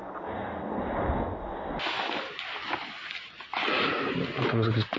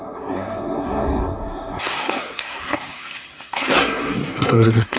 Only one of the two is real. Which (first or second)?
first